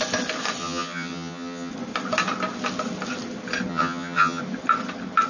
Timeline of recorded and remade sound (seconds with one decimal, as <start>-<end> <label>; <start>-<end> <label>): 0.0-0.6 recorded; 0.6-1.7 remade; 1.7-3.7 recorded; 3.7-4.4 remade; 4.4-5.3 recorded